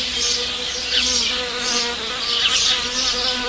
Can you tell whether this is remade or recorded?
recorded